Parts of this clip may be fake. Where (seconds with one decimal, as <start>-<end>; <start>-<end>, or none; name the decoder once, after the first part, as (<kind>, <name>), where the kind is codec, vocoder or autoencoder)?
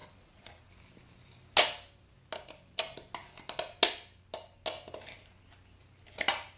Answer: 0.0-0.7 (vocoder, Vocos)